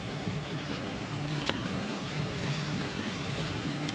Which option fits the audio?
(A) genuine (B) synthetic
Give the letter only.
B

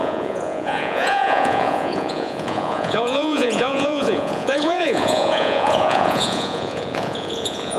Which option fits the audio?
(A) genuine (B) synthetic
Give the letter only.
B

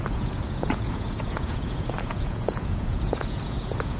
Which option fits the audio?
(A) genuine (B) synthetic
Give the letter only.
B